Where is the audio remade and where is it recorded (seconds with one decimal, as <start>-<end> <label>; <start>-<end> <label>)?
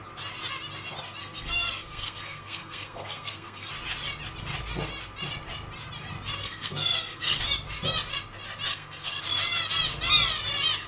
0.0-1.2 recorded; 1.2-3.7 remade; 3.7-6.4 recorded; 6.4-7.4 remade; 7.4-8.7 recorded; 8.7-9.2 remade; 9.2-10.9 recorded